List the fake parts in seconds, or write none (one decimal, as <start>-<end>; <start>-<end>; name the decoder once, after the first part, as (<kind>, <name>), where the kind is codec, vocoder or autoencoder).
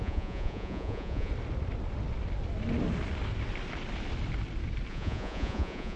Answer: 0.0-1.3 (vocoder, Vocos); 4.9-6.0